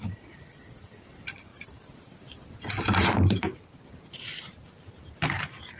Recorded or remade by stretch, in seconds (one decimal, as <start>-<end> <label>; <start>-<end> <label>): 0.0-1.5 recorded; 1.5-5.0 remade; 5.0-5.8 recorded